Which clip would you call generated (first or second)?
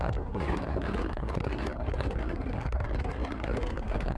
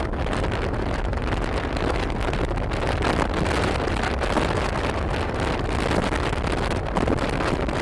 first